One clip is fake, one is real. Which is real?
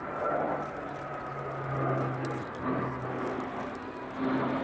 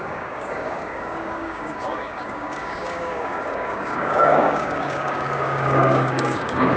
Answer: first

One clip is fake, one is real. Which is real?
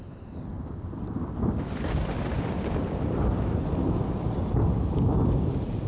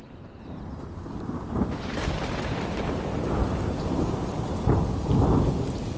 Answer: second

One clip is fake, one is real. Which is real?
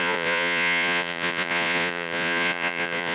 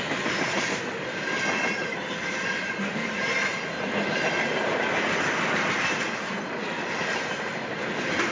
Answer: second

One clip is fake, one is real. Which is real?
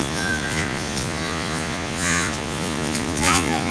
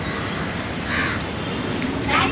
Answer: second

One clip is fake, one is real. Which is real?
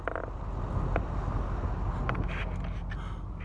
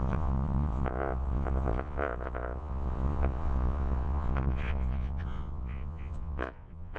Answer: first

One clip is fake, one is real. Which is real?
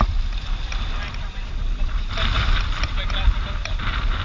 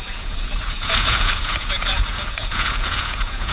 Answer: first